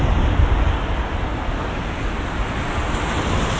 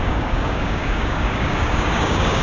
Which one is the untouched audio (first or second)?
first